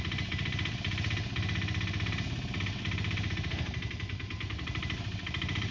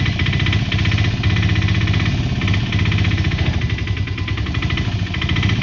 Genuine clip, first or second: second